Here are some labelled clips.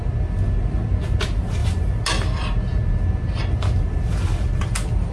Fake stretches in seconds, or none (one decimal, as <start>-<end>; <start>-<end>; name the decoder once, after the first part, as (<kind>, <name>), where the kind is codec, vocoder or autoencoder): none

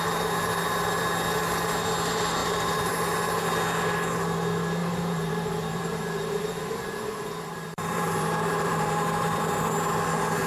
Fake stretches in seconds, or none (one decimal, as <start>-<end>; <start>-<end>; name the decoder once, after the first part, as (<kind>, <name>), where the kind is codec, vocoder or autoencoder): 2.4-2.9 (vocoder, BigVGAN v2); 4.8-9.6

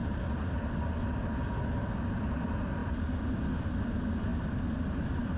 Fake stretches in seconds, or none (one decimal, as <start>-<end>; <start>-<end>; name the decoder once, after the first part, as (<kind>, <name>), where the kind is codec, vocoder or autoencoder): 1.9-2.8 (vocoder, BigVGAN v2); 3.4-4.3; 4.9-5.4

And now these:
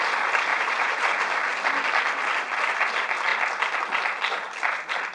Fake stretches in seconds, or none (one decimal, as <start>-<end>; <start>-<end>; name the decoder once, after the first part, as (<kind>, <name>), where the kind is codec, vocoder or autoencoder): 0.5-1.3 (vocoder, BigVGAN v2)

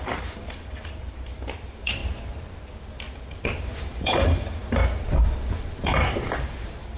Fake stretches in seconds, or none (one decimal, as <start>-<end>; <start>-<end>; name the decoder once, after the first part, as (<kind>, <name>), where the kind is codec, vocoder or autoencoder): 0.0-2.0 (vocoder, BigVGAN v2); 2.8-7.0

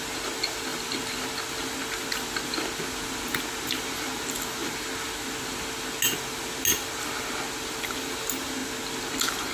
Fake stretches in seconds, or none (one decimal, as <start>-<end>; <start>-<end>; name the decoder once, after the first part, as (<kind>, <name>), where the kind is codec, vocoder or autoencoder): none